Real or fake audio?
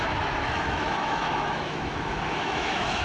fake